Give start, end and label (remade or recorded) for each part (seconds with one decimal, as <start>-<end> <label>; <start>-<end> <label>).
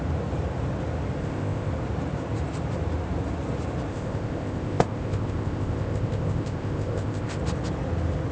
0.0-1.2 recorded; 1.2-1.7 remade; 1.7-3.9 recorded; 3.9-7.4 remade; 7.4-8.3 recorded